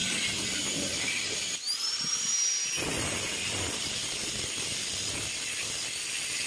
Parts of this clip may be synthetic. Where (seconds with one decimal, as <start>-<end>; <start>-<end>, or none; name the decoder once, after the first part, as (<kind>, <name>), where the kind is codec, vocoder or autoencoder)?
none